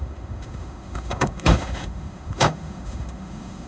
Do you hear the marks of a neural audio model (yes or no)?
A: yes